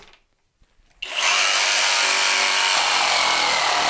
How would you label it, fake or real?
real